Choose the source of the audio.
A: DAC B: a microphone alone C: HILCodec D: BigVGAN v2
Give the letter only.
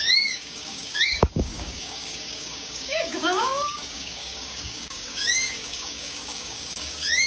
A